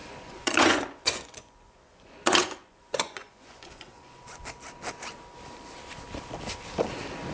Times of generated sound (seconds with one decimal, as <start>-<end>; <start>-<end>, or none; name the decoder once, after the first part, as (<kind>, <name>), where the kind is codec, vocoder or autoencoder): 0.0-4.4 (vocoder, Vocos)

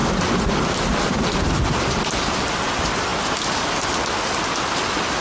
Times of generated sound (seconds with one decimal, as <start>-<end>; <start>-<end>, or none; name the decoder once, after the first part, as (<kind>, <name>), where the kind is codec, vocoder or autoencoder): 0.0-1.9 (vocoder, BigVGAN v2)

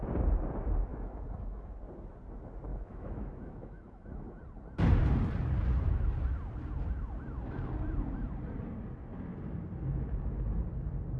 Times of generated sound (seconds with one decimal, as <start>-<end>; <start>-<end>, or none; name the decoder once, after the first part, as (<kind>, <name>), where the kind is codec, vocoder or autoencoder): 0.9-1.7 (autoencoder, DAC-VAE); 2.7-4.4